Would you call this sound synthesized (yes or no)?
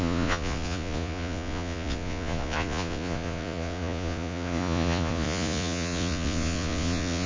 yes